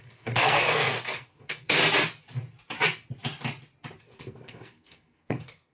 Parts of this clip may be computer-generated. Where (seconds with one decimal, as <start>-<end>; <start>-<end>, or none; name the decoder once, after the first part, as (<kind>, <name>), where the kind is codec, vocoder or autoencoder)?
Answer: 0.0-1.8 (codec, SNAC); 4.0-5.7